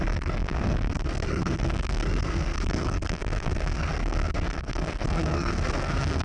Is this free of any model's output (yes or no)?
no